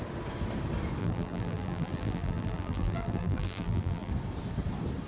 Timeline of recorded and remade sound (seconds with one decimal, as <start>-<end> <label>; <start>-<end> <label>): 0.0-1.0 recorded; 1.0-4.1 remade; 4.1-5.1 recorded